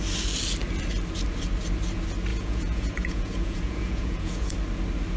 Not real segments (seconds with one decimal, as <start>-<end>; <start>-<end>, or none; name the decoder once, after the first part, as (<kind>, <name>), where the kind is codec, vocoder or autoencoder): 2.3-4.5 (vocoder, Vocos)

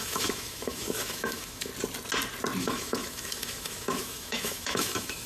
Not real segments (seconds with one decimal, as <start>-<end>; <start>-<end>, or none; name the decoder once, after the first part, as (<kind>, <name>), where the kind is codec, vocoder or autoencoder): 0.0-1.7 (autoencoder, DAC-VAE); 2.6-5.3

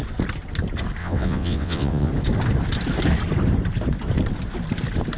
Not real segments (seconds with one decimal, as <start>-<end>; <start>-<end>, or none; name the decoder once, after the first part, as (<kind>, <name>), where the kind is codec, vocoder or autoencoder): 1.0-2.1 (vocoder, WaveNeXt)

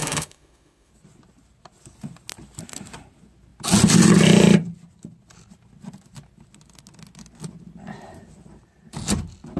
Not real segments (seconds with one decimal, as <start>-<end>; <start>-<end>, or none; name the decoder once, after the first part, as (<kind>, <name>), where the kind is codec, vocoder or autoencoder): 0.0-0.9 (autoencoder, DAC-VAE)

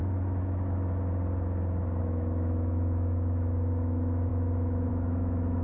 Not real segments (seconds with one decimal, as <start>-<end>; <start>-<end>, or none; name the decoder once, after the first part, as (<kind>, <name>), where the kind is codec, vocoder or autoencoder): 2.0-5.6 (autoencoder, DAC-VAE)

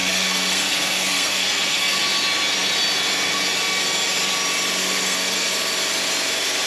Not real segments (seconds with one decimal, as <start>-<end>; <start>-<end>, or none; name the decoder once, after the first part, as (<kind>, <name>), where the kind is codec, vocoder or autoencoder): 0.0-2.0 (codec, SNAC); 4.8-5.5